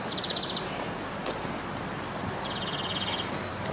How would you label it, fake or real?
real